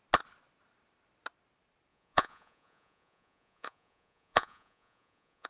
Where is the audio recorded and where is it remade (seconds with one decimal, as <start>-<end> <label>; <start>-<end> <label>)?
0.0-1.9 recorded; 1.9-5.5 remade